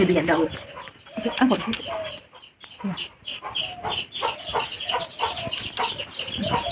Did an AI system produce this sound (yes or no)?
no